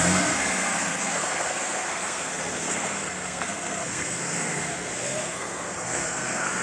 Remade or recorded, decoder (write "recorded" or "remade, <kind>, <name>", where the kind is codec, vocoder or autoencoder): remade, codec, SNAC